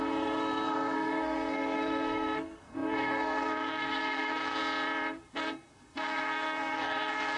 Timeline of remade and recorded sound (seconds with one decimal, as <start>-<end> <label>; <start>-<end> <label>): 0.0-4.6 remade; 4.6-5.3 recorded; 5.3-7.4 remade